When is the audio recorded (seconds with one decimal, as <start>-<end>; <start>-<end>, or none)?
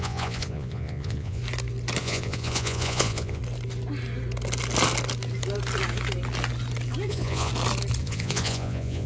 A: 1.4-2.0; 3.4-7.1; 7.5-8.0